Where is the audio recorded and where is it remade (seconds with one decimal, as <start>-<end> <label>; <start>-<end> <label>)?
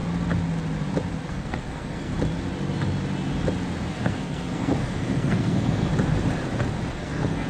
0.0-1.3 recorded; 1.3-2.1 remade; 2.1-3.9 recorded; 3.9-5.9 remade; 5.9-6.9 recorded; 6.9-7.5 remade